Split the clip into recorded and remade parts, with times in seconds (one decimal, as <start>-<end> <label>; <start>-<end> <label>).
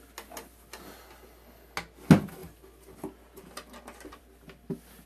0.0-5.1 recorded